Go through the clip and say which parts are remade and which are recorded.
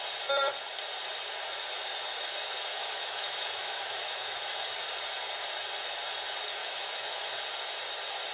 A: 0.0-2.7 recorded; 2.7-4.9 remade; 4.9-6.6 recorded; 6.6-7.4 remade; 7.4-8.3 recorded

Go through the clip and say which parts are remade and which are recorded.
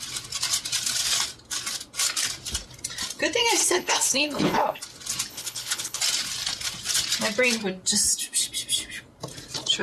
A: 0.0-3.6 recorded; 3.6-4.8 remade; 4.8-5.3 recorded; 5.3-6.0 remade; 6.0-9.8 recorded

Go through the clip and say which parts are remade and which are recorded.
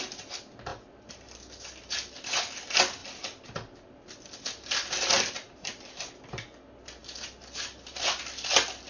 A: 0.0-3.0 recorded; 3.0-6.1 remade; 6.1-8.9 recorded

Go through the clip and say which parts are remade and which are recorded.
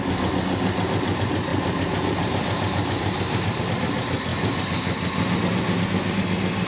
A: 0.0-1.5 recorded; 1.5-3.6 remade; 3.6-6.7 recorded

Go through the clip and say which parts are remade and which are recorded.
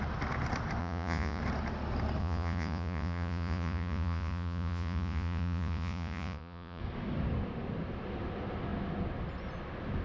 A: 0.0-0.8 recorded; 0.8-1.4 remade; 1.4-2.2 recorded; 2.2-6.8 remade; 6.8-10.0 recorded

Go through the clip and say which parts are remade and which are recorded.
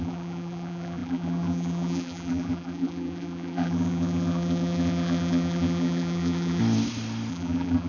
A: 0.0-6.6 remade; 6.6-7.3 recorded; 7.3-7.9 remade